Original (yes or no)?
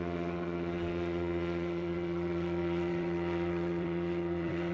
no